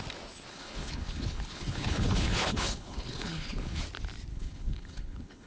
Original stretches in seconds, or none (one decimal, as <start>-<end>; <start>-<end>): 0.0-0.5; 3.8-4.3